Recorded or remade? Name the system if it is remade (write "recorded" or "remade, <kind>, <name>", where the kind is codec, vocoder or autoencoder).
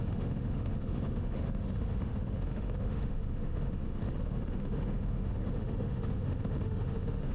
remade, autoencoder, DAC-VAE